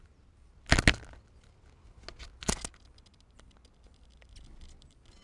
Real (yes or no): yes